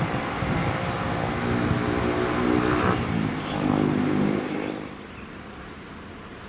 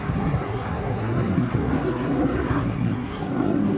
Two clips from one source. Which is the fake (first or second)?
second